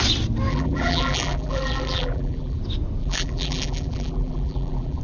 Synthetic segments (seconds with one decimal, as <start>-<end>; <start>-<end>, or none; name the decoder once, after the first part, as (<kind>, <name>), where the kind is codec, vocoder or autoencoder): 0.5-2.6 (vocoder, BigVGAN v2); 3.0-5.0